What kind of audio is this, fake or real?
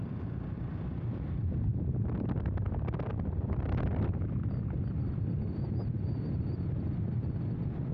real